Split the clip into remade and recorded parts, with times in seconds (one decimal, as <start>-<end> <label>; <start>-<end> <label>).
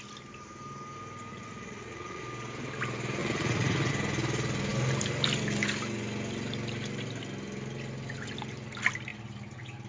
0.0-1.3 recorded; 1.3-2.2 remade; 2.2-3.2 recorded; 3.2-3.9 remade; 3.9-9.9 recorded